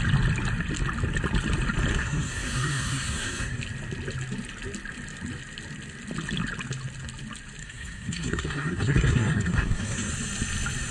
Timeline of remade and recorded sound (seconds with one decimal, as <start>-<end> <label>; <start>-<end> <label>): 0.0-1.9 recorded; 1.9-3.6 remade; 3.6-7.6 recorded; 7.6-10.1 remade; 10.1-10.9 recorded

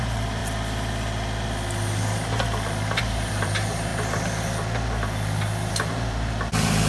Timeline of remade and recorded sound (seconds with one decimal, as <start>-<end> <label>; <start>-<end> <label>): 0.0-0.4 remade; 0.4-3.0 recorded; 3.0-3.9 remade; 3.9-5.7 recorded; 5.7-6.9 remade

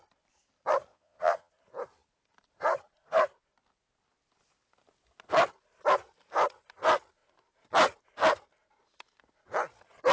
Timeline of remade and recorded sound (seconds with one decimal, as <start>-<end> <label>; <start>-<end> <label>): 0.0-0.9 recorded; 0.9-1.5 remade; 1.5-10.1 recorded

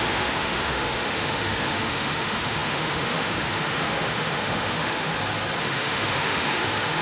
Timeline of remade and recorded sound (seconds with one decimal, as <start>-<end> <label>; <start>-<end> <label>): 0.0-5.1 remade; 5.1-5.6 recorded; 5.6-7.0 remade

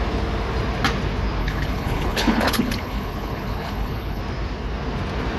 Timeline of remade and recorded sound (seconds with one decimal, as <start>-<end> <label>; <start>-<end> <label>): 0.0-1.4 recorded; 1.4-4.2 remade; 4.2-5.4 recorded

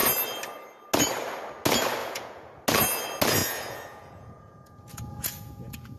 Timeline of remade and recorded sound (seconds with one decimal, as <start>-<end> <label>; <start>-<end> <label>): 0.0-2.0 recorded; 2.0-2.6 remade; 2.6-3.4 recorded; 3.4-6.0 remade

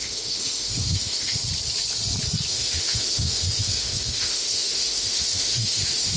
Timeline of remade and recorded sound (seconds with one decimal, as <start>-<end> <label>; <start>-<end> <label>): 0.0-1.4 remade; 1.4-2.5 recorded; 2.5-6.2 remade